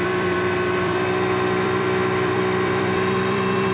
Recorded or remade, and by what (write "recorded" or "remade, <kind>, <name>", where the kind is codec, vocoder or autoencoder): remade, vocoder, BigVGAN v2